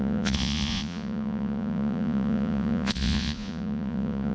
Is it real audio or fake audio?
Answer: fake